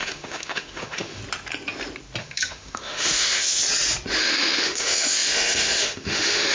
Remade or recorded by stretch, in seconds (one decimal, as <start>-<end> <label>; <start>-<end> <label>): 0.0-1.2 remade; 1.2-2.2 recorded; 2.2-3.6 remade; 3.6-4.2 recorded; 4.2-6.5 remade